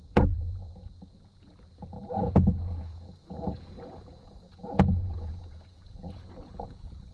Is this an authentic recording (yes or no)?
no